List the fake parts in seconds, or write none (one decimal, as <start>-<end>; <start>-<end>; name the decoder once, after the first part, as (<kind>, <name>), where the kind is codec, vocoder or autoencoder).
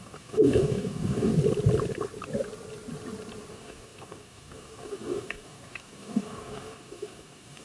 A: 0.0-1.3 (codec, DAC); 3.5-7.6